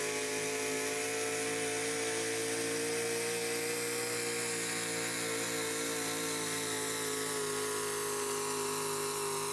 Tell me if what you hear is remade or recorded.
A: recorded